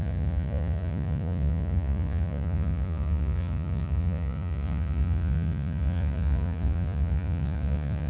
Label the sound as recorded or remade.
remade